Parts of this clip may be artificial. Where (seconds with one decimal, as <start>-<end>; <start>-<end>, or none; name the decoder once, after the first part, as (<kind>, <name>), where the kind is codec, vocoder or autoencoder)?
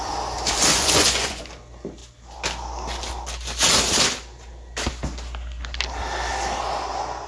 0.7-1.4 (vocoder, Vocos)